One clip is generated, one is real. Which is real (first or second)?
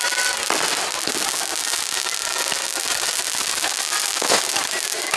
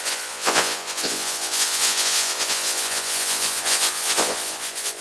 first